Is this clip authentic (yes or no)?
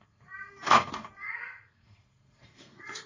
no